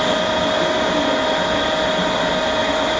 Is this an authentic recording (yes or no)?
yes